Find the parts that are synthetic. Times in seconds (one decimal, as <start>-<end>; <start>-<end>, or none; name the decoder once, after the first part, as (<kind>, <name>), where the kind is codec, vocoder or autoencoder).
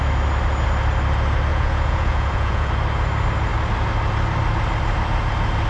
1.5-2.7 (vocoder, Vocos)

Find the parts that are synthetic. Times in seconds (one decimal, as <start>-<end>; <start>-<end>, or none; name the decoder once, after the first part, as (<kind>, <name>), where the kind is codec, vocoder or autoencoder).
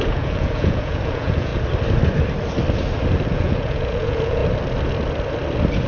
0.0-1.5 (vocoder, Vocos); 3.3-4.4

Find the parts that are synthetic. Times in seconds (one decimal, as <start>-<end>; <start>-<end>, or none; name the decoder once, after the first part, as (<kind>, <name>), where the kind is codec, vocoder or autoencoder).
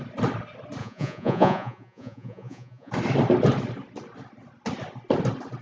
0.8-2.9 (vocoder, Vocos)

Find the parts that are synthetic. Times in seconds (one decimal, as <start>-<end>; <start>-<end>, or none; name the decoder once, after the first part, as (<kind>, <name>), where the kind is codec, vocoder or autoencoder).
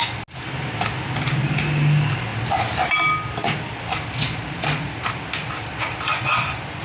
6.1-6.8 (vocoder, Vocos)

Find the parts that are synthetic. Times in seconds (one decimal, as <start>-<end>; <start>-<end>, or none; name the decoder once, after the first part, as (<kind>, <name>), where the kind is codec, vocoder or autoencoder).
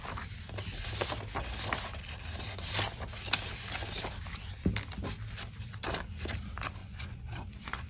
6.8-7.9 (vocoder, Vocos)